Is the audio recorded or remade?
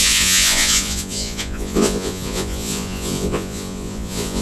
remade